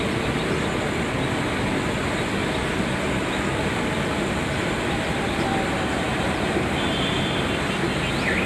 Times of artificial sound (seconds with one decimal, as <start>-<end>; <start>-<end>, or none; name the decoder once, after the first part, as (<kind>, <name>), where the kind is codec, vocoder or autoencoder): 2.4-3.1 (vocoder, BigVGAN v2); 5.5-6.8